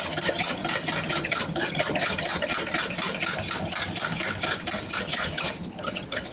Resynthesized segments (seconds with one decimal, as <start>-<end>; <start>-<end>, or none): 0.0-0.6; 1.1-2.5; 4.9-6.3